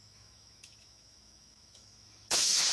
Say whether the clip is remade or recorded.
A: remade